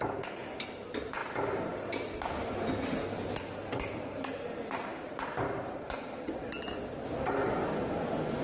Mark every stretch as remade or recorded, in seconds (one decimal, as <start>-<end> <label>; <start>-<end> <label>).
0.0-8.4 recorded